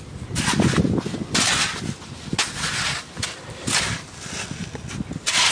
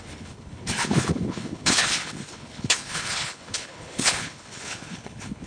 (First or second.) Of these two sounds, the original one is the first